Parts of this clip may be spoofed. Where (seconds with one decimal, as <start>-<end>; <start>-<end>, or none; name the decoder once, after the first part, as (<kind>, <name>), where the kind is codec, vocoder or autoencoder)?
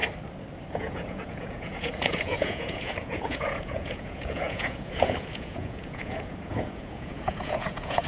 0.7-8.1 (vocoder, Vocos)